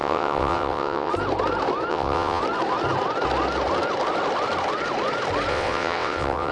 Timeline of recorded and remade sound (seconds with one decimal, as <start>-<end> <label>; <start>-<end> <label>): 0.0-1.1 remade; 1.1-1.9 recorded; 1.9-2.4 remade; 2.4-5.5 recorded; 5.5-6.5 remade